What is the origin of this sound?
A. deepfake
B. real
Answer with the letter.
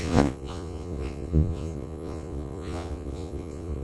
A